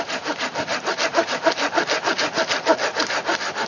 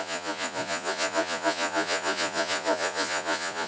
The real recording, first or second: first